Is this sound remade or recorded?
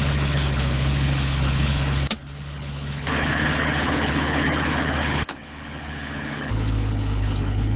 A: remade